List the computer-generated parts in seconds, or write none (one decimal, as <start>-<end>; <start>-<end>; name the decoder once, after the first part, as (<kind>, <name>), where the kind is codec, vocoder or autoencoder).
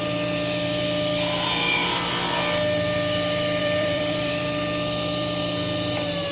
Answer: 3.6-4.3 (vocoder, BigVGAN v2)